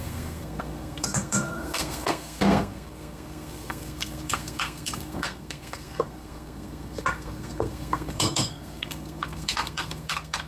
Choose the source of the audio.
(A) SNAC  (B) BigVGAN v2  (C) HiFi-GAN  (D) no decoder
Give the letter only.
A